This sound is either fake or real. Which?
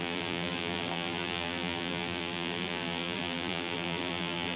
fake